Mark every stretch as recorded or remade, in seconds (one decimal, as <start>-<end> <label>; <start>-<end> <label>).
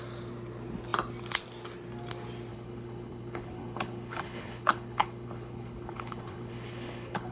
0.0-2.5 recorded; 2.5-7.3 remade